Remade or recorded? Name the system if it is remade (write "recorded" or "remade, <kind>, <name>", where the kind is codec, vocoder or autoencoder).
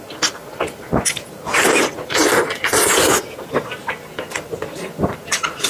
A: recorded